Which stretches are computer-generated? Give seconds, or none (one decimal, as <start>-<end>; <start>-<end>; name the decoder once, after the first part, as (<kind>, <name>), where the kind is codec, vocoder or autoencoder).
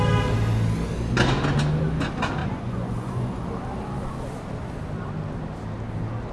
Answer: 2.4-3.4 (vocoder, Vocos)